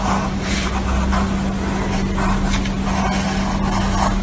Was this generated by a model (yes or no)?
no